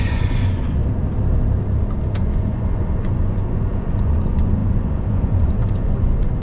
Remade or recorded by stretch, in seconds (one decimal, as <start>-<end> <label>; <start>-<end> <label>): 0.0-0.8 remade; 0.8-2.2 recorded; 2.2-6.4 remade